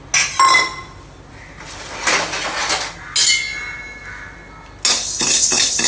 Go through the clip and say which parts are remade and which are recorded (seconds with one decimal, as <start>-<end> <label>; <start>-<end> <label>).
0.0-5.9 recorded